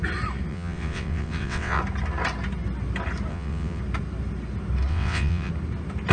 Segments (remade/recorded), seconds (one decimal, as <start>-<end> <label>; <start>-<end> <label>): 0.0-0.5 recorded; 0.5-1.8 remade; 1.8-3.3 recorded; 3.3-3.8 remade; 3.8-4.9 recorded; 4.9-5.5 remade; 5.5-6.1 recorded